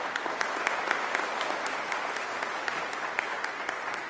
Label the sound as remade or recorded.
recorded